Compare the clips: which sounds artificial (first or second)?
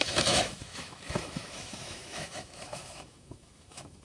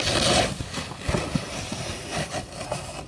first